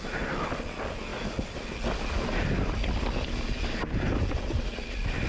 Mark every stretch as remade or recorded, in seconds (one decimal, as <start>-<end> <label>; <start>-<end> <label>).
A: 0.0-5.3 recorded